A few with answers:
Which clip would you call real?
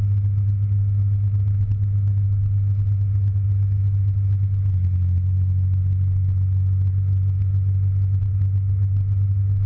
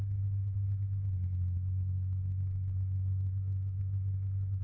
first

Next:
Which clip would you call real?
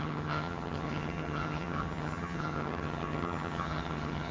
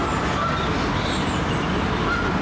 second